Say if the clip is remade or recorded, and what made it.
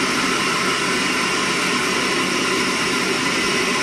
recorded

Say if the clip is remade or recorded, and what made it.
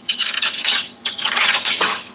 remade, vocoder, HiFi-GAN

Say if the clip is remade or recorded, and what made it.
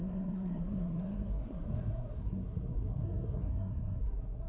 remade, codec, SNAC